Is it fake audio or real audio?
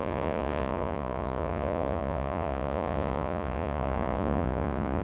fake